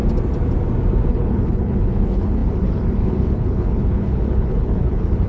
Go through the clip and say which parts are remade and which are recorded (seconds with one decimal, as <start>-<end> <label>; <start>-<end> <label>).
0.0-1.1 recorded; 1.1-5.3 remade